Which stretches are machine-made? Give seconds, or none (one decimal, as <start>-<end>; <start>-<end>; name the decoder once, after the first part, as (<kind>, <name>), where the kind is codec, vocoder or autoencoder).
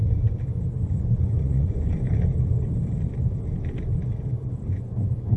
0.7-2.1 (vocoder, Vocos); 4.4-5.4